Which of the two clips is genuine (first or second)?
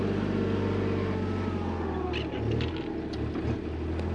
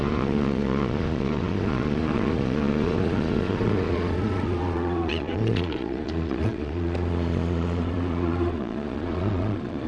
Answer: first